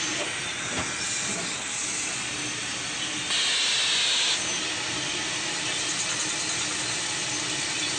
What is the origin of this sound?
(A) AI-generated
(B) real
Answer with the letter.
B